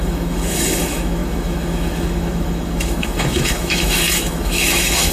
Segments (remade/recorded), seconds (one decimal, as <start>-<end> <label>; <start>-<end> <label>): 0.0-5.1 remade